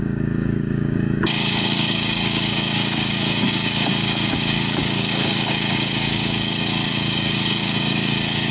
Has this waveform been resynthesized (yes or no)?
yes